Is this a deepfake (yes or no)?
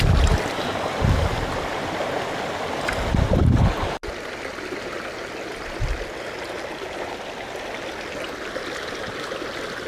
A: no